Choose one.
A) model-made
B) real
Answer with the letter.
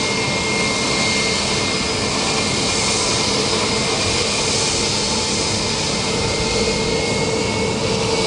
B